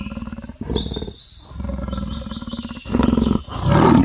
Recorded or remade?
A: recorded